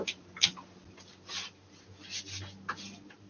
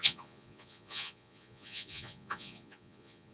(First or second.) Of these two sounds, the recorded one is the first